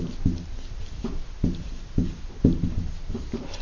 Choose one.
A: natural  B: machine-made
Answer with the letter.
A